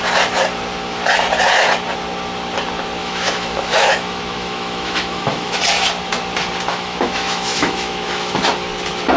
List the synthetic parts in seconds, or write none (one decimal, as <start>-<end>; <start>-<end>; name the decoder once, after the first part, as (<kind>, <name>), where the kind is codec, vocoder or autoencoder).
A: 3.0-5.6 (autoencoder, DAC-VAE); 6.7-8.5